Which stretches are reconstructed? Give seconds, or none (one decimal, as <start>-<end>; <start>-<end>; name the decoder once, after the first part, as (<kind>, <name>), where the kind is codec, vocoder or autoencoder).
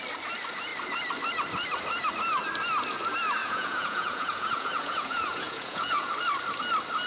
3.4-6.1 (vocoder, Vocos)